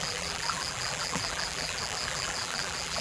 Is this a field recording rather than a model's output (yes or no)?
no